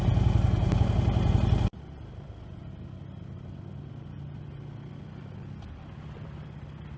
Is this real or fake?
real